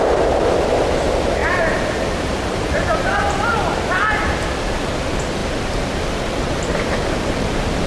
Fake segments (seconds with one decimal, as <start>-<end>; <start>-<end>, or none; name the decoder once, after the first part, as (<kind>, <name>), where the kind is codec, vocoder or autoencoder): 1.4-3.5 (vocoder, BigVGAN v2); 5.4-7.4